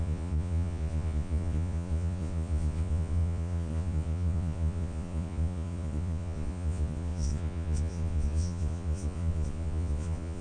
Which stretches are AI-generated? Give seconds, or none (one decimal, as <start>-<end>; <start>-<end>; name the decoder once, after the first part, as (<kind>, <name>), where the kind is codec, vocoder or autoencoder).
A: 0.0-10.4 (vocoder, Vocos)